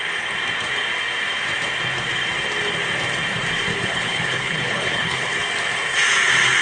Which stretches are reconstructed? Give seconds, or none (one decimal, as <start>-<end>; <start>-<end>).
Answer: 3.7-5.3